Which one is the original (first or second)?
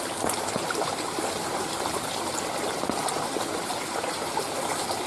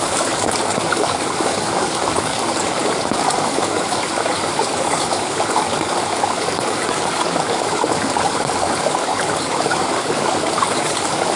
first